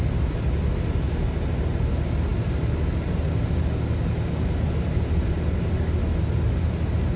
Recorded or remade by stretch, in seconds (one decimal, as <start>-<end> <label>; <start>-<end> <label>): 0.0-7.2 recorded